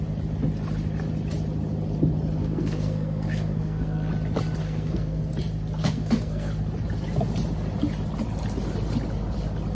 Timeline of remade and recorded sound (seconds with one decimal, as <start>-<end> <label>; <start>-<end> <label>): 0.0-2.4 recorded; 2.4-4.1 remade; 4.1-4.6 recorded; 4.6-5.2 remade; 5.2-5.8 recorded; 5.8-6.5 remade; 6.5-9.7 recorded